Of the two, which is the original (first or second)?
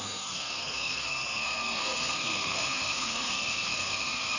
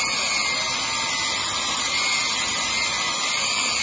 second